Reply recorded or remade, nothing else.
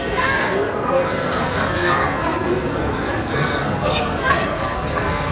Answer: remade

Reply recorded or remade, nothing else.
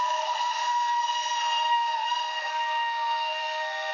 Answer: remade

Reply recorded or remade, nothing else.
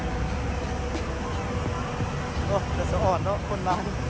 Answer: recorded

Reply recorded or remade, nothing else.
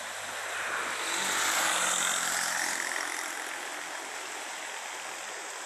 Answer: recorded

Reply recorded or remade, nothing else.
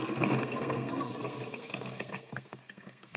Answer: remade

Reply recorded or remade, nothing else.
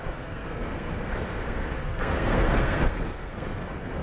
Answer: remade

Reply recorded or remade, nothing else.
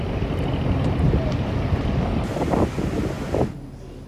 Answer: recorded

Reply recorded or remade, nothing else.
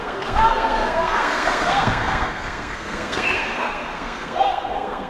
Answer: remade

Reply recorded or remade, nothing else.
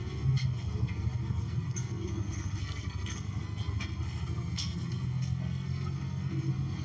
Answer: remade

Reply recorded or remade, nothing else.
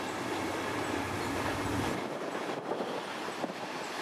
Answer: recorded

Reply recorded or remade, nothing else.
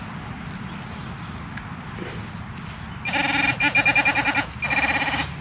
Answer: recorded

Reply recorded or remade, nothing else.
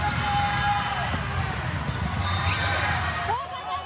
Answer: recorded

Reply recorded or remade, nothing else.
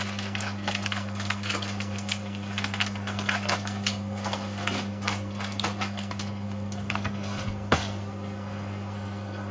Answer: remade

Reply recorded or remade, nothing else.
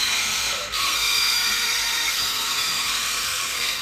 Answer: remade